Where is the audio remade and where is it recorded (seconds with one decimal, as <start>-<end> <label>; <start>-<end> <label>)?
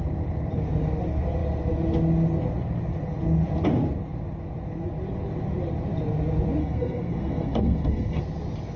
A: 0.0-6.6 recorded; 6.6-8.2 remade; 8.2-8.8 recorded